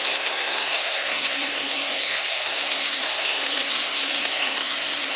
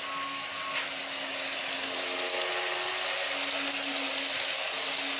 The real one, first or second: second